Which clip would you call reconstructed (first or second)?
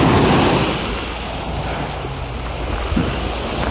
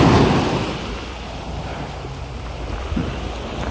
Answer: second